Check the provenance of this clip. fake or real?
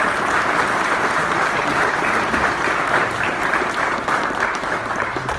fake